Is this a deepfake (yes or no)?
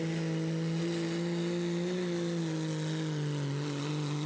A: no